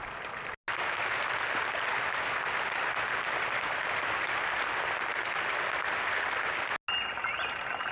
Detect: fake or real real